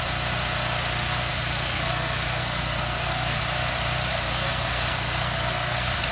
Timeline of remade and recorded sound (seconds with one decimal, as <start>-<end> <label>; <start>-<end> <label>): 0.0-1.3 recorded; 1.3-3.4 remade; 3.4-4.1 recorded; 4.1-6.1 remade